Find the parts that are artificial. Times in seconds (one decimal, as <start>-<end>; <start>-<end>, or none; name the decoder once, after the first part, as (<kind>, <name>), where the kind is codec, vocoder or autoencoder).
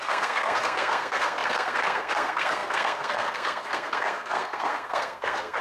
0.0-5.6 (codec, SNAC)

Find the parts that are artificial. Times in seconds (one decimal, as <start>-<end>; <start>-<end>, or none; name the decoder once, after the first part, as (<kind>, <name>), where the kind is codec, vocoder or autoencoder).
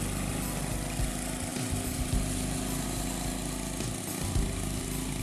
none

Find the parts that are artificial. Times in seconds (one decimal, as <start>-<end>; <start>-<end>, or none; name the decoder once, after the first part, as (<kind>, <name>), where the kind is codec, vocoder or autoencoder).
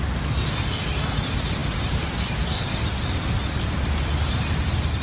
none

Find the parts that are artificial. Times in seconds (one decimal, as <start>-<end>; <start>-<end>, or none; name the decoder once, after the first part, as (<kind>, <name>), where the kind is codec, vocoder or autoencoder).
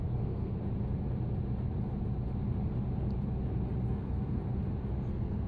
0.0-0.6 (codec, SNAC); 3.9-4.4; 5.1-5.5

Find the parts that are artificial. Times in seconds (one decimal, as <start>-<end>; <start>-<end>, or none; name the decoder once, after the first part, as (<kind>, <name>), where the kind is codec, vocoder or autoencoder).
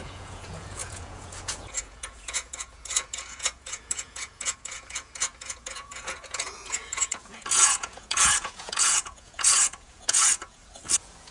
0.0-11.3 (vocoder, Vocos)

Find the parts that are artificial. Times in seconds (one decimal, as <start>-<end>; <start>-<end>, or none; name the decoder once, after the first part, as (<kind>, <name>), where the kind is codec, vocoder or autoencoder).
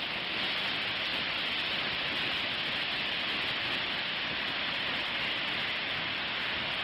none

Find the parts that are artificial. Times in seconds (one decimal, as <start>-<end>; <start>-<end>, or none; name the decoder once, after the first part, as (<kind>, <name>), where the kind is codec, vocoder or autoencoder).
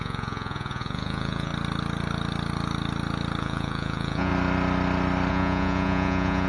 0.0-1.5 (vocoder, Vocos); 3.4-4.3; 5.3-6.5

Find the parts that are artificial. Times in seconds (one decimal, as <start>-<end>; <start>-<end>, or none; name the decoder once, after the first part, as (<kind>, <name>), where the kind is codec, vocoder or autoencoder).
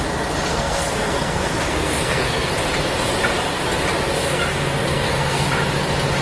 0.5-2.5 (codec, SNAC); 4.2-5.5